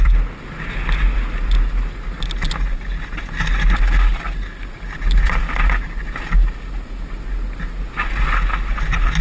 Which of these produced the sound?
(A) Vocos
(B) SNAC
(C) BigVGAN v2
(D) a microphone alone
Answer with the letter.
D